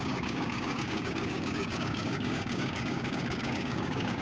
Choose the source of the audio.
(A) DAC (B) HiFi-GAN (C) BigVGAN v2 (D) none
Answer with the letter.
A